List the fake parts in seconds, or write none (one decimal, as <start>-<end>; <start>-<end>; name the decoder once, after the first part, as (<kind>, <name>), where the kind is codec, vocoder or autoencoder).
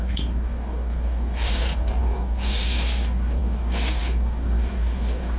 0.0-5.4 (codec, DAC)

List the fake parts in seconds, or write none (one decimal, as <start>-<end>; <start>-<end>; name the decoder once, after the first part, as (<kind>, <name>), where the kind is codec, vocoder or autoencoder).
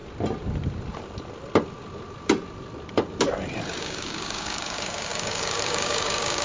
3.8-6.4 (codec, DAC)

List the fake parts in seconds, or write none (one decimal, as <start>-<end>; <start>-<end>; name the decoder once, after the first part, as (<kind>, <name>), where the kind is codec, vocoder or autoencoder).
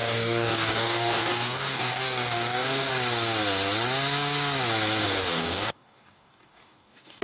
0.0-2.9 (codec, DAC); 5.0-7.2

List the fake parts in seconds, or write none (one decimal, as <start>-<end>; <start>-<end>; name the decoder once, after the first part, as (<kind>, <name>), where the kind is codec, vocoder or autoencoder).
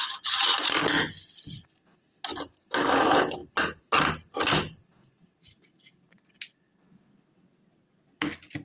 none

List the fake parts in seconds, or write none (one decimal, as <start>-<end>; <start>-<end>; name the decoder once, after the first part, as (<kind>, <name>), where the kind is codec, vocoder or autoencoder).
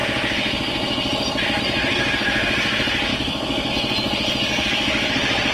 3.1-3.7 (codec, DAC); 4.5-5.1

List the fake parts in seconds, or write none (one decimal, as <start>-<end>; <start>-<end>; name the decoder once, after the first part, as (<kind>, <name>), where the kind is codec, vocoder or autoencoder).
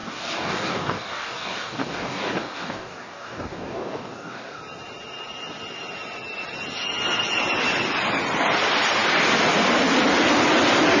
0.0-4.6 (codec, DAC)